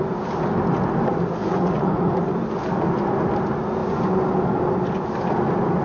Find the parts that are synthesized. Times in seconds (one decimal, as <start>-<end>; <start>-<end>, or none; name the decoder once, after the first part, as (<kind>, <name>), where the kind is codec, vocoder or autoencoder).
1.4-2.2 (vocoder, Vocos)